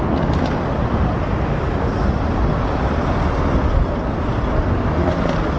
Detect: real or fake real